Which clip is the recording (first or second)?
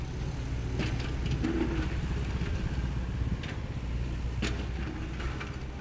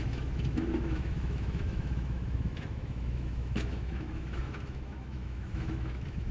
first